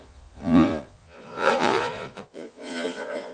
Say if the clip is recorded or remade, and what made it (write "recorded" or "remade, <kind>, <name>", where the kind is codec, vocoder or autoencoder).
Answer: remade, vocoder, Vocos